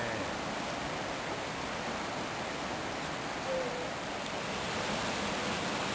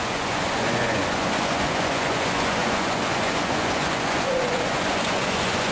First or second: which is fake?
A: second